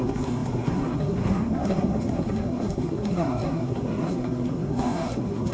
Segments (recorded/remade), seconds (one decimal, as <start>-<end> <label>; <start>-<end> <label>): 0.0-5.5 remade